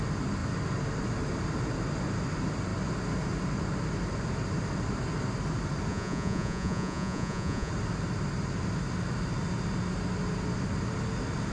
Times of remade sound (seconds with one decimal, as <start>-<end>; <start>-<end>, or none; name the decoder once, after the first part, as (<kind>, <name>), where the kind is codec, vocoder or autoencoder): 5.9-7.7 (vocoder, Vocos)